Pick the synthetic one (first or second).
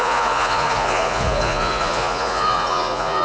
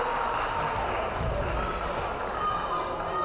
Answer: first